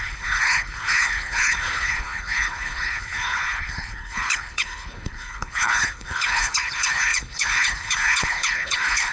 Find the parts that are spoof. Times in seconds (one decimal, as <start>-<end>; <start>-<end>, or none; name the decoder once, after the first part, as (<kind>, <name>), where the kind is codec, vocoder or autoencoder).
0.0-9.1 (codec, HILCodec)